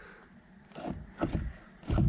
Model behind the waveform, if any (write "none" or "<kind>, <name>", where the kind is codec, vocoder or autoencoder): none